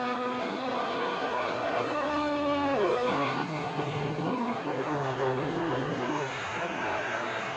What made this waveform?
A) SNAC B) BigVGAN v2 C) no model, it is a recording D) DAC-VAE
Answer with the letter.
A